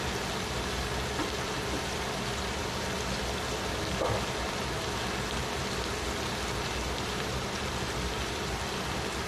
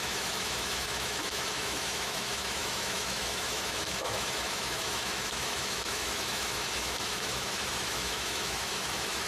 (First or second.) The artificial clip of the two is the second